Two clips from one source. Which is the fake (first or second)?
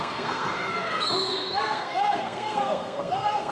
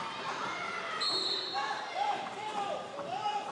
first